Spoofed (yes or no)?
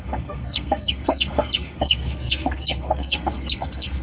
yes